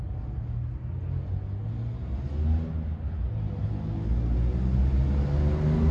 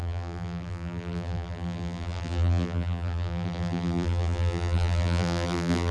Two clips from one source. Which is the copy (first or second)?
second